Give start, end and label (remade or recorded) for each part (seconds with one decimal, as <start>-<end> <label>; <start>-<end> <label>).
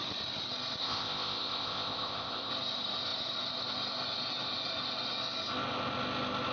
0.0-0.8 recorded; 0.8-2.5 remade; 2.5-6.5 recorded